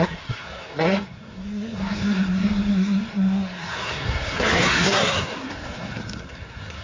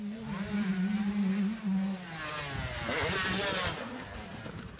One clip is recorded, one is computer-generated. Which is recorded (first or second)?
second